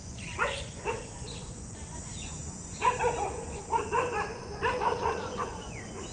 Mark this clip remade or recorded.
remade